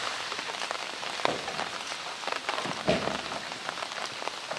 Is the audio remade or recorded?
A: recorded